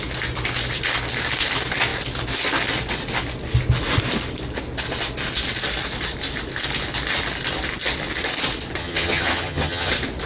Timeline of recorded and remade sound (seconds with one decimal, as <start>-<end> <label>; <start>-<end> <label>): 0.0-8.8 recorded; 8.8-9.9 remade; 9.9-10.3 recorded